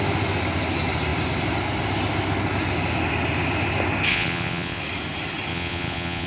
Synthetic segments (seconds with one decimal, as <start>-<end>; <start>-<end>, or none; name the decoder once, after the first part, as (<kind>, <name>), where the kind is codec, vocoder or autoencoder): 4.1-4.8 (vocoder, Vocos); 5.5-6.3